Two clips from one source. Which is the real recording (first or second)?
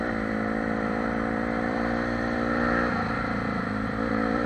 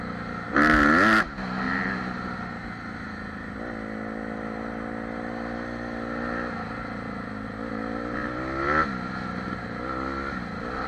second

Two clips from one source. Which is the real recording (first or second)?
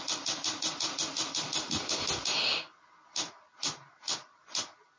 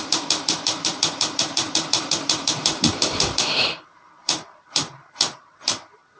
first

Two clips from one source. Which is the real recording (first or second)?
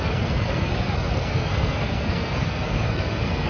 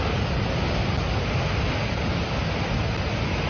second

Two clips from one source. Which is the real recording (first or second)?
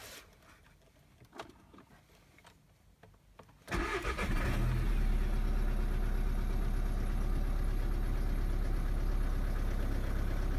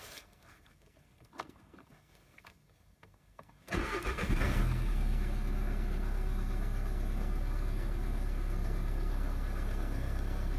first